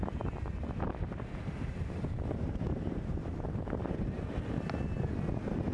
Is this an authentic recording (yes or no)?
no